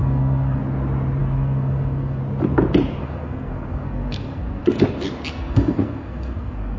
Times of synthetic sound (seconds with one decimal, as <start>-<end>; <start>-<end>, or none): 0.0-0.6; 1.2-2.2; 3.0-4.8; 5.3-6.8